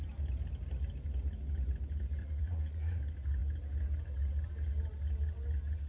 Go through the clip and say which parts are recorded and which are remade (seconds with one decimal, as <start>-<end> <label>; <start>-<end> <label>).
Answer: 0.0-2.2 recorded; 2.2-3.0 remade; 3.0-5.9 recorded